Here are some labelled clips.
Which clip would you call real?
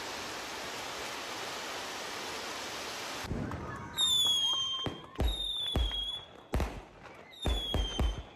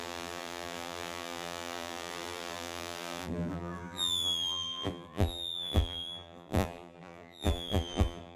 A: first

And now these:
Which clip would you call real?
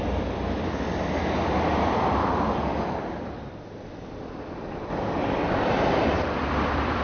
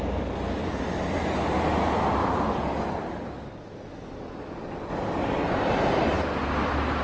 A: second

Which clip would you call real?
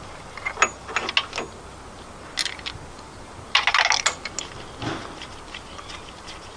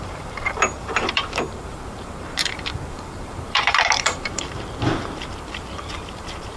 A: first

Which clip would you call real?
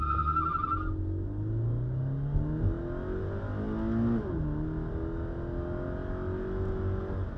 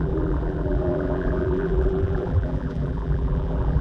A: first